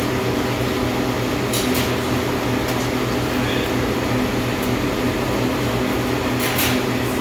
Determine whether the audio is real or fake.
real